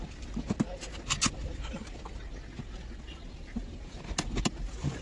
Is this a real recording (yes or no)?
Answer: yes